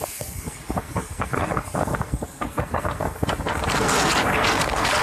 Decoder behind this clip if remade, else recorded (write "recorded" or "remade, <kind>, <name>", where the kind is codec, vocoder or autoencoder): remade, codec, SNAC